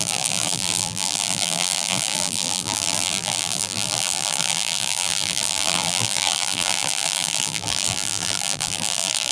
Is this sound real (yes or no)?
no